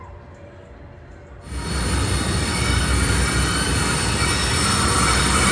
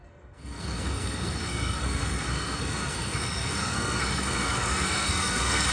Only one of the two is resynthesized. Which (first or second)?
second